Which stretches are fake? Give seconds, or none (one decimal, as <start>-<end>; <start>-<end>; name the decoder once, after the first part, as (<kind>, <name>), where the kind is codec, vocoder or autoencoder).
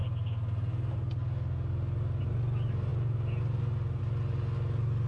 none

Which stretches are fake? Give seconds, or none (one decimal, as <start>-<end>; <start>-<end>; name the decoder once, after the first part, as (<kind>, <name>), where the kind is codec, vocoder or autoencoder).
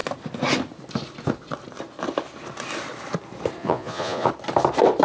3.6-4.3 (vocoder, Vocos)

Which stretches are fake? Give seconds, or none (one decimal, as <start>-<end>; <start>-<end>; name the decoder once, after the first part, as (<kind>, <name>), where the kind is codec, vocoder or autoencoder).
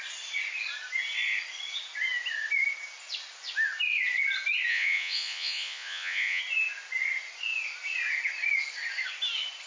4.7-6.4 (vocoder, Vocos)